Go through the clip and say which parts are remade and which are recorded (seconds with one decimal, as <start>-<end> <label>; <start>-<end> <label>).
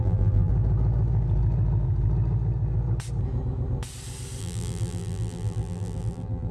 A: 0.0-0.5 remade; 0.5-4.4 recorded; 4.4-6.5 remade